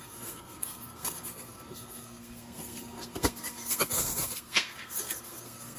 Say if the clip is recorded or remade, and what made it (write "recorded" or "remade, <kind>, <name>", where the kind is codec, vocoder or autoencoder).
remade, codec, SNAC